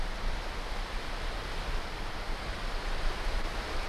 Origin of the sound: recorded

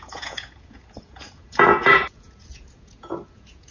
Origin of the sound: remade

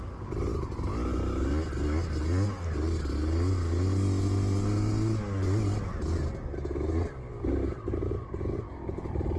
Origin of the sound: recorded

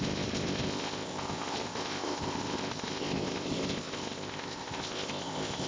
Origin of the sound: remade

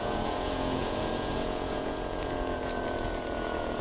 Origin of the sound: remade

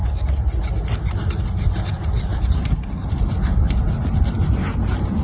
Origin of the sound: recorded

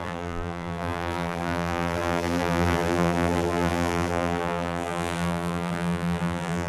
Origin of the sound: remade